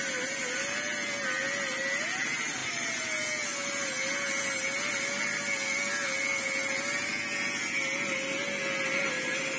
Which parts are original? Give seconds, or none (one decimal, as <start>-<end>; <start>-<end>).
0.0-9.6